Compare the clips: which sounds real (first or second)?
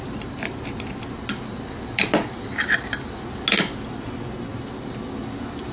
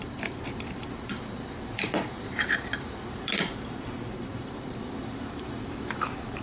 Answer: first